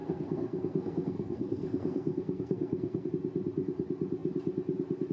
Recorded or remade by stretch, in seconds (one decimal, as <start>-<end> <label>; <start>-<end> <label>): 0.0-3.1 remade; 3.1-5.1 recorded